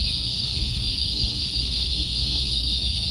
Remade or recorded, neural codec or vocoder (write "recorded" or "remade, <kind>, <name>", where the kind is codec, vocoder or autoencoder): remade, codec, SNAC